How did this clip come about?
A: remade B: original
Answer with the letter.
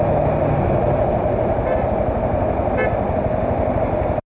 B